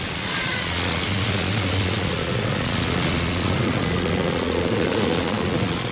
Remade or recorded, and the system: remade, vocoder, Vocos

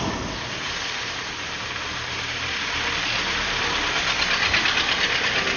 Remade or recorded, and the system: recorded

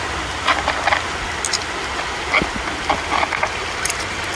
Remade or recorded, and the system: recorded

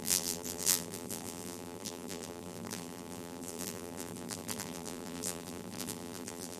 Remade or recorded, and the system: remade, vocoder, BigVGAN v2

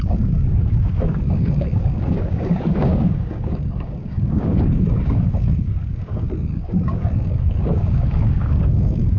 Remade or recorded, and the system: remade, codec, DAC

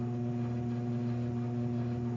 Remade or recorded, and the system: recorded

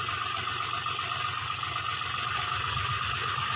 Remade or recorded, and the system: recorded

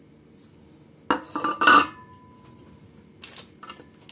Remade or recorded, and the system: recorded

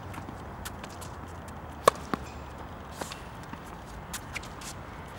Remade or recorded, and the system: recorded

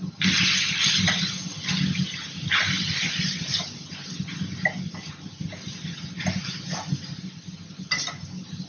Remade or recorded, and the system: recorded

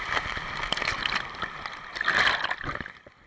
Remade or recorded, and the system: recorded